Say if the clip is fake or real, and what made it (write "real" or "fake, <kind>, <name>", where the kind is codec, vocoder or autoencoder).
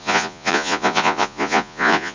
fake, vocoder, Vocos